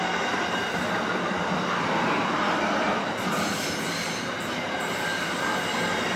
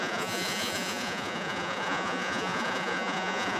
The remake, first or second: second